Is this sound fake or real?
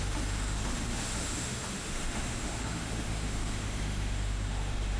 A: fake